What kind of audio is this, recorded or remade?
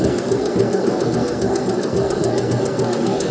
remade